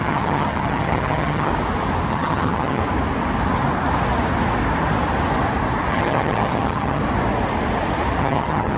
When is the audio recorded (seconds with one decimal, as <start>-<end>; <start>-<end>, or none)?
1.5-2.1; 2.8-5.9; 7.0-8.2